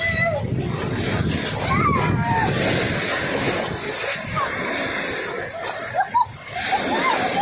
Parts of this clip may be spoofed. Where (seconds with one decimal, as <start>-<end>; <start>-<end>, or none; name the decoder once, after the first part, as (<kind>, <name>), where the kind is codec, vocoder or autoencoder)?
none